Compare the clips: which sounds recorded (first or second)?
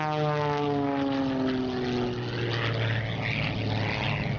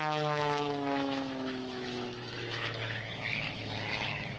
first